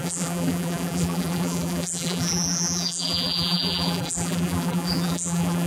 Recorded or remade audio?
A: remade